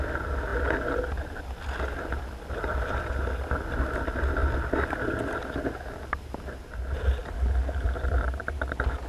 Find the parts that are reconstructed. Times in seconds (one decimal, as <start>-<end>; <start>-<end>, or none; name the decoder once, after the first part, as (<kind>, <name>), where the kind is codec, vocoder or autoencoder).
none

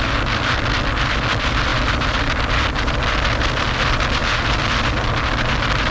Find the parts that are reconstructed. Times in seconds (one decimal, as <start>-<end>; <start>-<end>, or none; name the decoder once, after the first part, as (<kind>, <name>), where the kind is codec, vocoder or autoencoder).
none

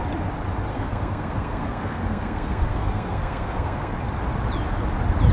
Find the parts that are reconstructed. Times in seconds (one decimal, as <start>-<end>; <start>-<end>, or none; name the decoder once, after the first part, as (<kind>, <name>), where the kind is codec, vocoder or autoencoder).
0.7-3.9 (codec, SNAC)

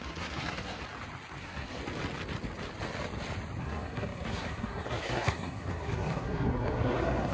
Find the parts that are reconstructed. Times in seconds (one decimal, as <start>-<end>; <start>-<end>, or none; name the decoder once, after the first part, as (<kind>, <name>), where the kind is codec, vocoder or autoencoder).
0.0-0.8 (codec, SNAC); 1.4-1.8; 3.6-7.3

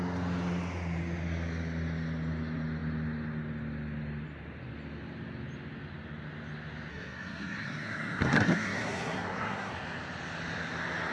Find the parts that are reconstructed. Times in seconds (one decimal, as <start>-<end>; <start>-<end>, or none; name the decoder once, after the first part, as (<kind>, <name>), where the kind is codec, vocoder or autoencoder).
6.9-9.7 (codec, SNAC)

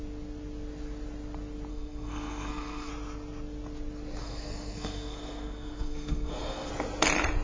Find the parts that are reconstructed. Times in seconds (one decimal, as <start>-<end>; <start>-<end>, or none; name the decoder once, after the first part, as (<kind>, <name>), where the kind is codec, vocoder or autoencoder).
1.7-2.9 (codec, SNAC); 4.2-6.7

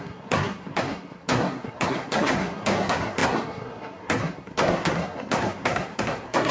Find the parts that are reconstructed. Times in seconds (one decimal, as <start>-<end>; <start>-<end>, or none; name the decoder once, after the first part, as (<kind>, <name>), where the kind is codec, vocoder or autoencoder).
0.0-6.5 (codec, SNAC)